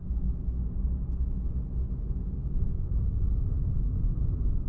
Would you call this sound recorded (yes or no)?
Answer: yes